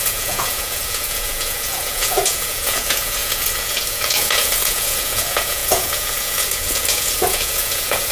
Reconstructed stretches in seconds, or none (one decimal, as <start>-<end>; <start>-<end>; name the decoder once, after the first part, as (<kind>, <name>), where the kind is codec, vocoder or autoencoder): 0.0-8.1 (vocoder, Vocos)